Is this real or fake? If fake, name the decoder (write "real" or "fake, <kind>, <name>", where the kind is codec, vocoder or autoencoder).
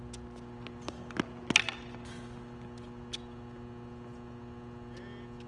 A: real